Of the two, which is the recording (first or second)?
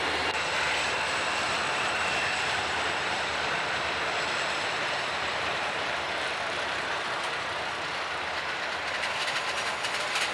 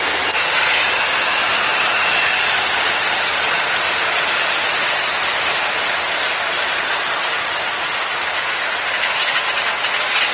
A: second